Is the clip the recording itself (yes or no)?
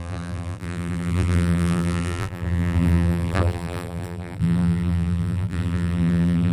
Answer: no